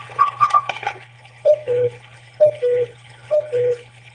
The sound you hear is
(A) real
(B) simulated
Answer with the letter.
B